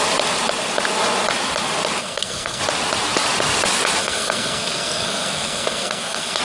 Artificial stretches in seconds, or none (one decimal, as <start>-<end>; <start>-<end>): 2.0-2.6; 4.0-6.4